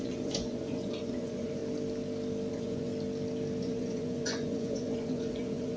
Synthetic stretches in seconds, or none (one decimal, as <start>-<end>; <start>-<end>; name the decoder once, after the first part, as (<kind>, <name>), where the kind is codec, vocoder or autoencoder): 0.0-1.6 (vocoder, Vocos); 2.5-2.9; 3.6-5.8